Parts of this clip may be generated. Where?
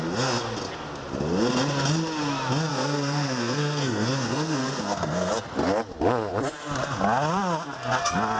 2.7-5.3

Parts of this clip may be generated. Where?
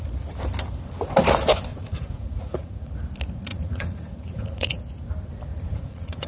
1.7-2.9; 3.5-4.8; 5.5-6.3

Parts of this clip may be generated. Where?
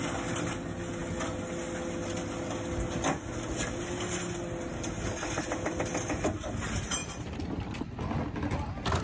none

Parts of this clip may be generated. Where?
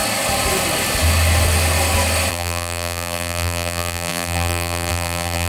2.3-5.5